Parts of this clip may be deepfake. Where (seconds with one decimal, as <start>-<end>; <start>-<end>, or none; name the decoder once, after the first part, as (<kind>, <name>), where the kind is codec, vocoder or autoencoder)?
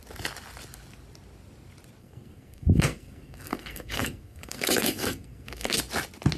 2.0-5.8 (codec, SNAC)